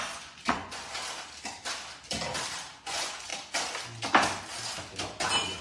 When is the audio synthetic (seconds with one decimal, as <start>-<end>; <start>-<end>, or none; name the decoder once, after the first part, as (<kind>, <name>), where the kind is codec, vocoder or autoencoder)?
0.0-0.8 (vocoder, Vocos); 2.7-3.3